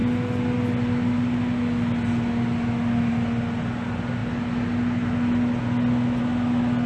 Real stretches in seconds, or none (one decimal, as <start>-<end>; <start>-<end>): 0.0-6.9